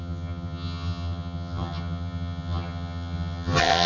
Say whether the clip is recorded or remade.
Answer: remade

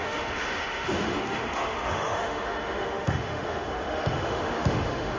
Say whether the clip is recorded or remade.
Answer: remade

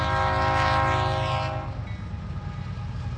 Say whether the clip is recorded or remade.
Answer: recorded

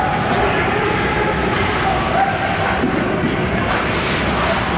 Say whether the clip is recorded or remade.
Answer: recorded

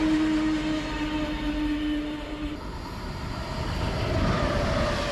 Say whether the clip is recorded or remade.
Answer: recorded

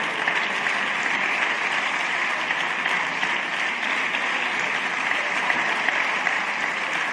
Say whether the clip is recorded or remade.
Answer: recorded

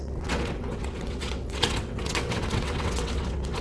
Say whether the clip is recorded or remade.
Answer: remade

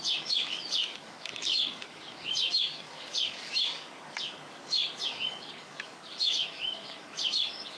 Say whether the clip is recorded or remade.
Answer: remade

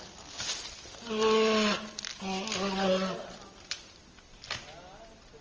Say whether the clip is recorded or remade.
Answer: recorded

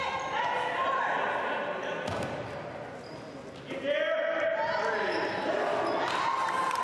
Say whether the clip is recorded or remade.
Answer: recorded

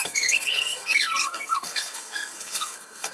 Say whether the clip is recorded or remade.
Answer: remade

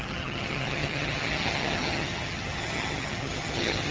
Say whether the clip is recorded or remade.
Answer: remade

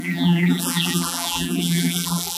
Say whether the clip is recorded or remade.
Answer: remade